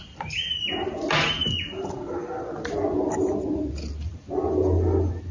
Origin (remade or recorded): recorded